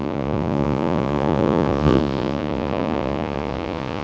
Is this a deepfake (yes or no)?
yes